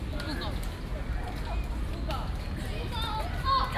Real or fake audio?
real